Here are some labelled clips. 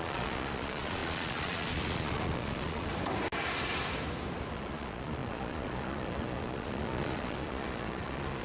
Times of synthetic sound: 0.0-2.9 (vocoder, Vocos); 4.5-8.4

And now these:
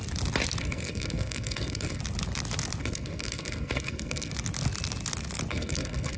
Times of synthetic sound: 0.6-2.0 (codec, SNAC); 2.8-4.3; 5.5-6.2